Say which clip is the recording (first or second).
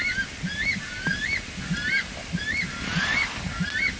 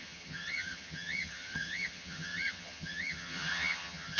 first